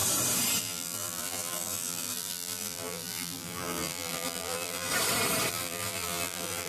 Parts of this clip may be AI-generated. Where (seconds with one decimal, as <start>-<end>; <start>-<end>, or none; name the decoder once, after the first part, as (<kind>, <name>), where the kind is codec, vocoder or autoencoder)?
0.6-4.9 (vocoder, BigVGAN v2); 5.5-6.7

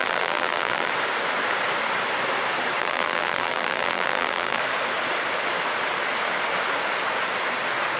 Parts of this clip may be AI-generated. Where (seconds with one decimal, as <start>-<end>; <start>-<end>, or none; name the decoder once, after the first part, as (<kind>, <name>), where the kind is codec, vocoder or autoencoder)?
0.0-0.9 (vocoder, BigVGAN v2); 2.8-4.6

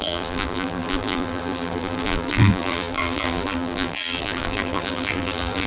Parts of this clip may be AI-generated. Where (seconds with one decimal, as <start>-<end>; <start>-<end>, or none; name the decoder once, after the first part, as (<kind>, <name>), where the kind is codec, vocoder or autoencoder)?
0.0-5.7 (vocoder, BigVGAN v2)

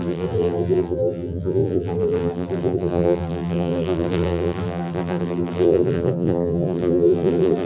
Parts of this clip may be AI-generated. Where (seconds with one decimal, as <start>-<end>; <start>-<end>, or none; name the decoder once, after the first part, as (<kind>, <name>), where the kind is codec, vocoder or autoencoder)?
0.0-7.7 (vocoder, BigVGAN v2)